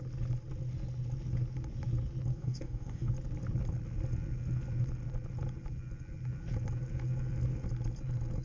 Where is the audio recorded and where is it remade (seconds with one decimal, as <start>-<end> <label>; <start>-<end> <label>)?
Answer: 0.0-2.3 recorded; 2.3-3.1 remade; 3.1-8.4 recorded